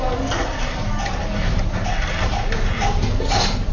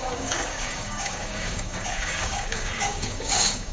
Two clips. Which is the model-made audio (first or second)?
second